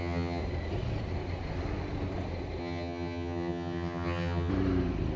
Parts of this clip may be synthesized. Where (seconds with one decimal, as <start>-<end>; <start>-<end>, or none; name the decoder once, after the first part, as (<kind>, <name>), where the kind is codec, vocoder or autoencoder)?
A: 0.0-0.4 (vocoder, HiFi-GAN); 2.6-4.5